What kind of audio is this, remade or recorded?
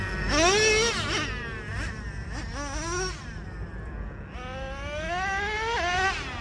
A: recorded